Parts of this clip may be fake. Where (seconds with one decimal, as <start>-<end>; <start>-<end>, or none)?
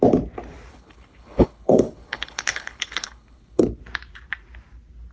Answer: 0.7-3.6